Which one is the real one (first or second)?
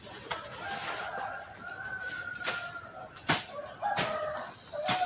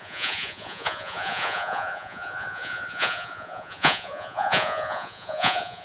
first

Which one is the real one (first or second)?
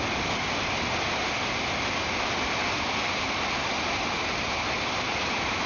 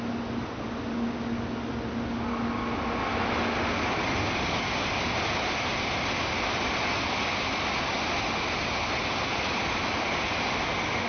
second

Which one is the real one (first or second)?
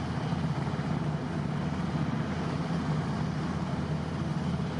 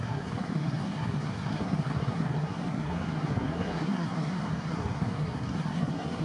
first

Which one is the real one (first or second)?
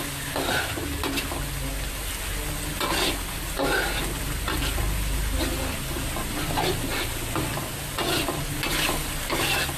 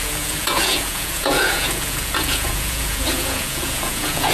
first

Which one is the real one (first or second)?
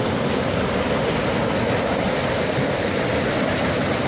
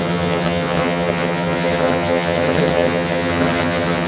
first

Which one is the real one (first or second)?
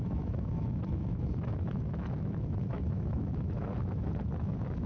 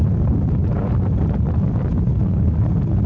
second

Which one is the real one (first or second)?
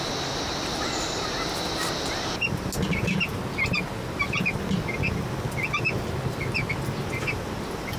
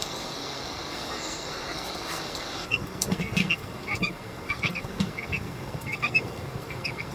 first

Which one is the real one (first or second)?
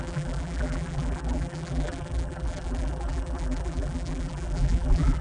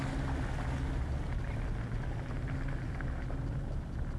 second